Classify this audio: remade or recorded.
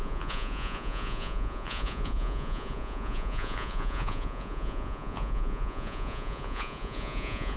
remade